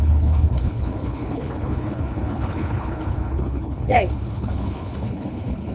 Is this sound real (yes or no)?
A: no